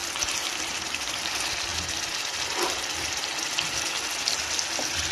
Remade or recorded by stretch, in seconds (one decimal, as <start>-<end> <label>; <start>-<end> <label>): 0.0-5.1 recorded